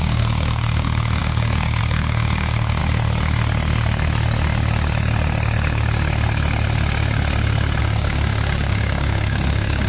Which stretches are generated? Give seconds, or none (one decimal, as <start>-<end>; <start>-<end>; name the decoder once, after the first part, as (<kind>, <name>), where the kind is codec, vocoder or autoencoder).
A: 0.0-2.8 (codec, DAC); 7.8-9.9